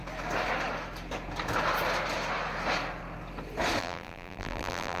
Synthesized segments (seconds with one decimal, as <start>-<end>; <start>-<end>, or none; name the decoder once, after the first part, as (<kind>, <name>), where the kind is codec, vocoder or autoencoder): 3.8-5.0 (vocoder, BigVGAN v2)